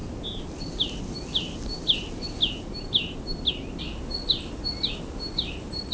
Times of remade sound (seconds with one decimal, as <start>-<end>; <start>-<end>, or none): none